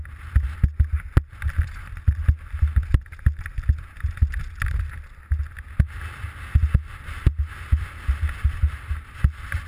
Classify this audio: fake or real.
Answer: real